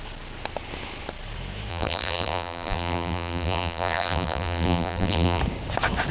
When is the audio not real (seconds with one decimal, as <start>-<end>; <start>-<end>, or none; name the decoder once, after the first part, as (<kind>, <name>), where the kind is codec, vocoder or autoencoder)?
1.7-5.4 (vocoder, BigVGAN v2)